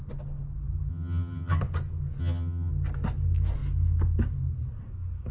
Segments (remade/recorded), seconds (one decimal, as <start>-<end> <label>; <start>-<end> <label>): 0.0-0.9 recorded; 0.9-1.6 remade; 1.6-2.2 recorded; 2.2-2.7 remade; 2.7-5.3 recorded